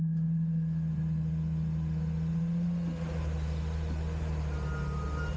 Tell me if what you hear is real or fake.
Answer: real